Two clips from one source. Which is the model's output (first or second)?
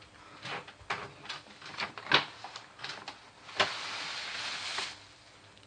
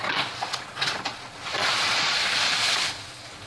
second